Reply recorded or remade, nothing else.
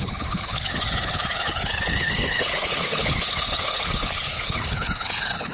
remade